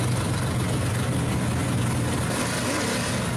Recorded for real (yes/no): yes